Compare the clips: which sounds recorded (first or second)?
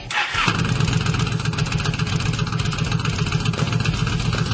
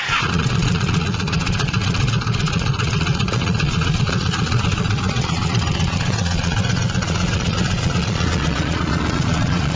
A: first